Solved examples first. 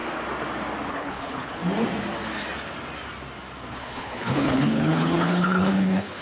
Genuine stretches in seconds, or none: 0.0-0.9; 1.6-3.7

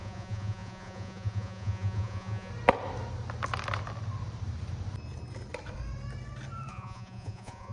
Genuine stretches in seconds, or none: 2.5-6.7

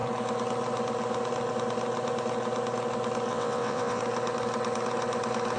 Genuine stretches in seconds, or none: 0.0-3.3; 4.0-5.6

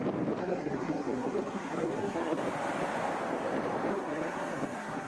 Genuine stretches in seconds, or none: 0.0-0.4; 2.4-3.9